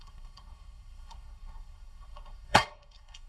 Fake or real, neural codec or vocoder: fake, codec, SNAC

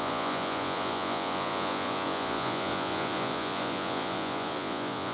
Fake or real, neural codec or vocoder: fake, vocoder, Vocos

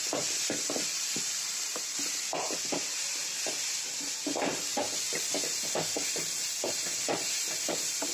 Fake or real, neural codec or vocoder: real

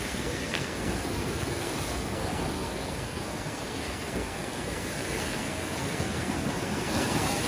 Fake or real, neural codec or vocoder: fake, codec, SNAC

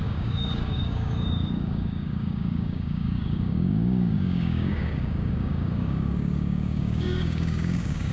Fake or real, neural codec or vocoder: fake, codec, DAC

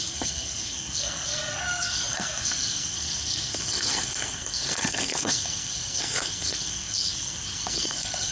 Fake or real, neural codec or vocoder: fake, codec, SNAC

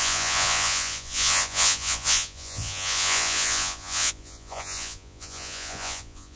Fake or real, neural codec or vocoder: fake, vocoder, Vocos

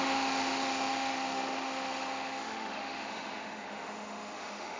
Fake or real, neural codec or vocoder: fake, autoencoder, DAC-VAE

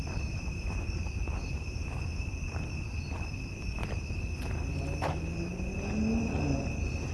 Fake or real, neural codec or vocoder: real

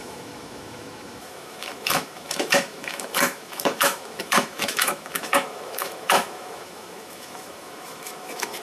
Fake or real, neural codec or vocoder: fake, autoencoder, DAC-VAE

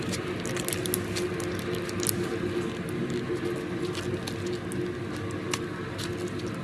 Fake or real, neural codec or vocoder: real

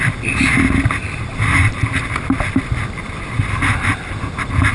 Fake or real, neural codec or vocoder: real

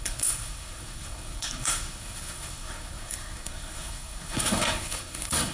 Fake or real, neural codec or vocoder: fake, codec, SNAC